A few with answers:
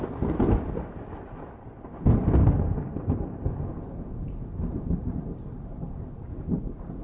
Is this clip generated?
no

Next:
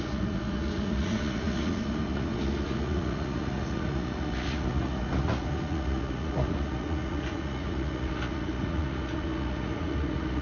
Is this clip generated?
yes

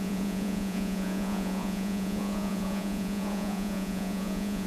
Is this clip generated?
yes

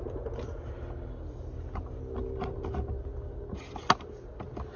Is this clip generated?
no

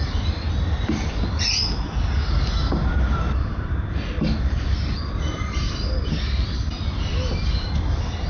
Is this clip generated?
no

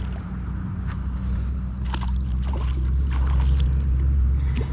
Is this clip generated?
no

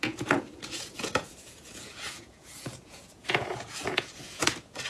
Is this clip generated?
yes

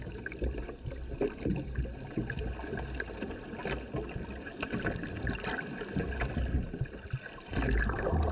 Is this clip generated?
no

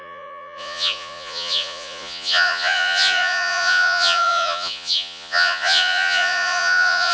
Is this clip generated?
yes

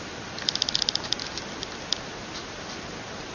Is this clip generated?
no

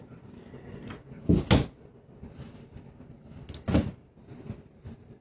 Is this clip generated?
no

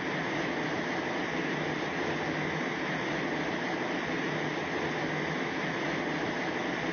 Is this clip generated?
no